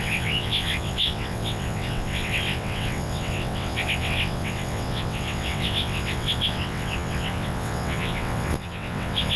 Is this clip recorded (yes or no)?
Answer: no